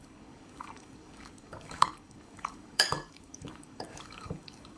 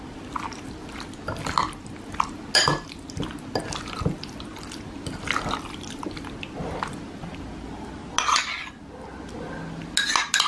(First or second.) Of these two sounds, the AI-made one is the first